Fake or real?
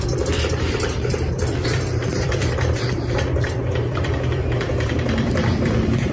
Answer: fake